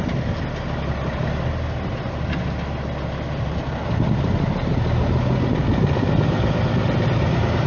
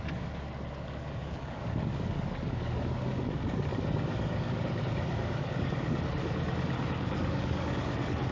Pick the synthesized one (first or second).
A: second